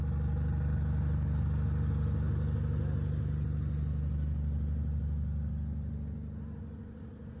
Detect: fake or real real